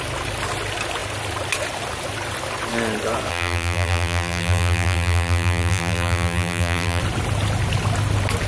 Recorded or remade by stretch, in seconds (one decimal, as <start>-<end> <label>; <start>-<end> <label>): 0.0-3.3 recorded; 3.3-7.0 remade; 7.0-8.5 recorded